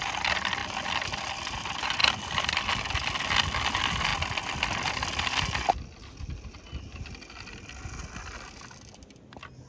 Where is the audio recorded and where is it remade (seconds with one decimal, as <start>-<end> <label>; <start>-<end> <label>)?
0.0-9.7 recorded